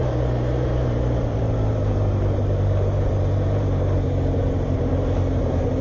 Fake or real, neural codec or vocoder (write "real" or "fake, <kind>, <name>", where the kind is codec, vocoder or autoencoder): fake, vocoder, BigVGAN v2